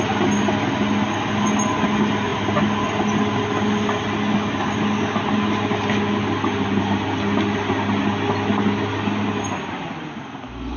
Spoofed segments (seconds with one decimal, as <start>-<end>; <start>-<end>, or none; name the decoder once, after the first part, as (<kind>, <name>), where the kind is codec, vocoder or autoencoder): none

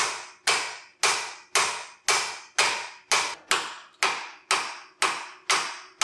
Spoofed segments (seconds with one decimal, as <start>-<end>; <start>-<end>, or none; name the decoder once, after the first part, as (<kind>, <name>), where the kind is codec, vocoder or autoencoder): none

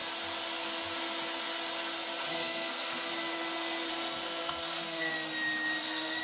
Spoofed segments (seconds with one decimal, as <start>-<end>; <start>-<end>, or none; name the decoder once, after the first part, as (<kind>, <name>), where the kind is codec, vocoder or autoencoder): 2.3-3.1 (codec, SNAC); 3.9-5.1; 5.8-6.2

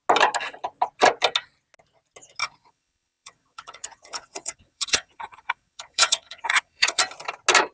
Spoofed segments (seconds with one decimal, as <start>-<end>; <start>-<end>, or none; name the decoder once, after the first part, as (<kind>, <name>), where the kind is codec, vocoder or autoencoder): 2.4-7.0 (vocoder, WaveNeXt)

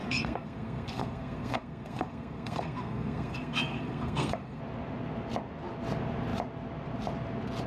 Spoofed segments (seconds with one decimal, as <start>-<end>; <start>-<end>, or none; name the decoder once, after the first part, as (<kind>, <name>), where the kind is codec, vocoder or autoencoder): 0.0-4.6 (codec, SNAC)